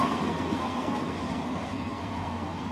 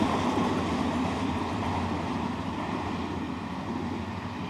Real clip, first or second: second